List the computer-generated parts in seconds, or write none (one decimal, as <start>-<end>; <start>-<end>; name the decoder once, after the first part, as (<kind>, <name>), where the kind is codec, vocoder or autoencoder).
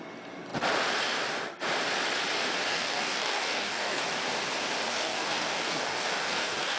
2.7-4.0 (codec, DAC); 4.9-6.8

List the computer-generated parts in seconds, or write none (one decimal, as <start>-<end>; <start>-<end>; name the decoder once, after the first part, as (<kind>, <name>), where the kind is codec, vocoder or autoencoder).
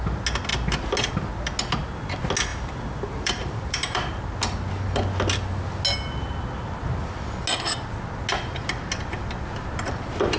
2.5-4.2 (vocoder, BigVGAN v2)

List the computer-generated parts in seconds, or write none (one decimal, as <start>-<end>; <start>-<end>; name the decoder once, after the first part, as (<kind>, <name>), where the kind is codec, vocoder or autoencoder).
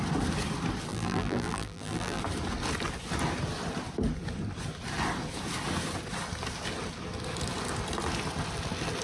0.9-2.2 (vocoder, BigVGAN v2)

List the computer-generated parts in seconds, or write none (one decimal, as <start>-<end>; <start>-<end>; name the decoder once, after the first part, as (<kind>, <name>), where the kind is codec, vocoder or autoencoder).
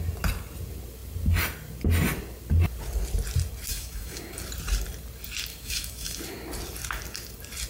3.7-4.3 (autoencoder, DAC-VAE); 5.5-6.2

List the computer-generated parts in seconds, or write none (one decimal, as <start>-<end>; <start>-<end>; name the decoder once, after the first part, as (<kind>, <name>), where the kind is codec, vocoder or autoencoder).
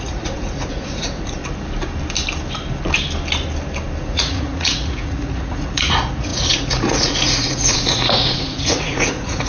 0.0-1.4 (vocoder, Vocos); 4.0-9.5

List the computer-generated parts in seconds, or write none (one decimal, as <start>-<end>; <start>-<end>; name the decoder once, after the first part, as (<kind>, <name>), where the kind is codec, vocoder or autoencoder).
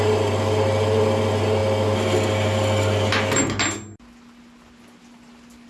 none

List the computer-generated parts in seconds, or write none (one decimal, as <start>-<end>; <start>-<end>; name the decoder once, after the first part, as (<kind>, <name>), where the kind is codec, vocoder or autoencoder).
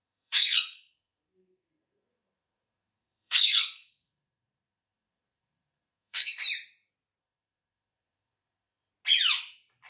0.0-6.4 (codec, SNAC); 7.2-8.9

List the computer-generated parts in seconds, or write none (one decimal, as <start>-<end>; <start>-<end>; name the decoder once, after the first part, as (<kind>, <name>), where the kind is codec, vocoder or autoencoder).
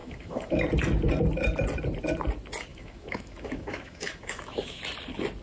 0.0-0.6 (autoencoder, DAC-VAE); 2.7-4.8